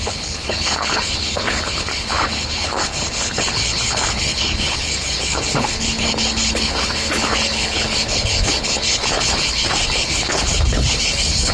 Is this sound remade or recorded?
remade